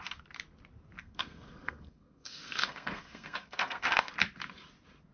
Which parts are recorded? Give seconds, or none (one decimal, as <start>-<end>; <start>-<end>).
0.0-1.0; 4.1-5.1